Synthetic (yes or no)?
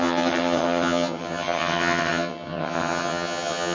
yes